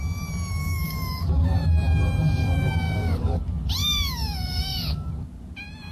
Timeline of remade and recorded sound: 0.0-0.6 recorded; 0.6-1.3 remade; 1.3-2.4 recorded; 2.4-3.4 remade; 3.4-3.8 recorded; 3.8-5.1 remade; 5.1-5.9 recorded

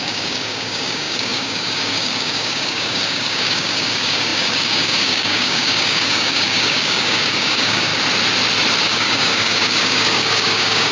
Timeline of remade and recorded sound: 0.0-7.9 remade; 7.9-8.8 recorded; 8.8-10.9 remade

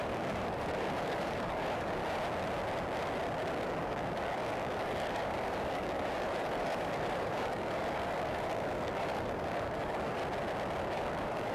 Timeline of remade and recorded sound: 0.0-2.0 remade; 2.0-3.6 recorded; 3.6-10.2 remade; 10.2-10.8 recorded; 10.8-11.5 remade

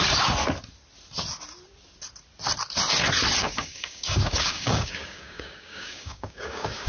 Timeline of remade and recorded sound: 0.0-3.4 recorded; 3.4-6.9 remade

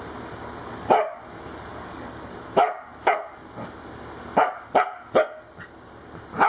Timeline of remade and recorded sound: 0.0-0.6 recorded; 0.6-1.2 remade; 1.2-1.7 recorded; 1.7-2.3 remade; 2.3-6.5 recorded

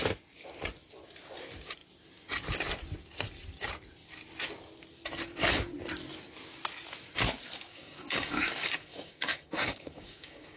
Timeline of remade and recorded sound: 0.0-7.7 recorded; 7.7-10.6 remade

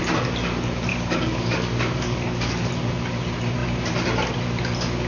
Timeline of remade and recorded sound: 0.0-0.9 recorded; 0.9-2.7 remade; 2.7-5.1 recorded